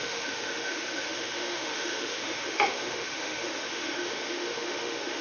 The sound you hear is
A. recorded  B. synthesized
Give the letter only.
B